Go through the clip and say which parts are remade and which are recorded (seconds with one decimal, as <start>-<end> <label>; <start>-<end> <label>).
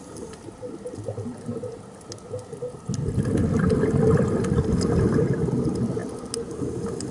0.0-7.1 recorded